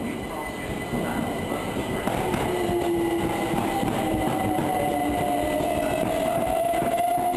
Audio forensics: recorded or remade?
recorded